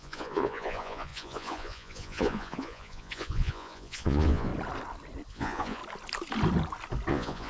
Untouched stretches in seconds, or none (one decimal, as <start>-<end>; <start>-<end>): 4.5-5.3; 5.8-7.1